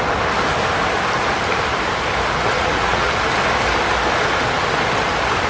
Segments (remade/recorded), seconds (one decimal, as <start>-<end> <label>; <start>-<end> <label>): 0.0-2.5 recorded; 2.5-3.1 remade; 3.1-5.5 recorded

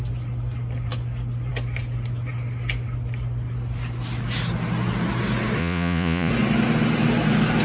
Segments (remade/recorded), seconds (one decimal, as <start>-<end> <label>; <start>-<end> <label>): 0.0-5.6 recorded; 5.6-6.3 remade; 6.3-7.6 recorded

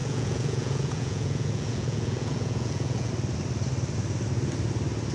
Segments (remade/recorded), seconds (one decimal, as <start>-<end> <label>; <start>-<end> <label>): 0.0-3.1 remade; 3.1-5.1 recorded

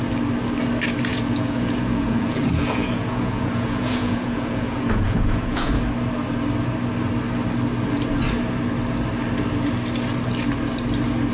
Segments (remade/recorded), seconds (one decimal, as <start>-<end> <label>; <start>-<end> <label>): 0.0-1.1 recorded; 1.1-5.8 remade; 5.8-11.3 recorded